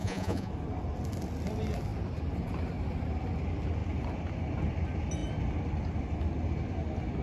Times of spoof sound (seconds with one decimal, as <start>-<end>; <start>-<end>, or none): 0.0-0.5